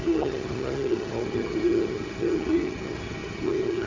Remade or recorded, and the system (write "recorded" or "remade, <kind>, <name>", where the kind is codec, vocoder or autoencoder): remade, vocoder, HiFi-GAN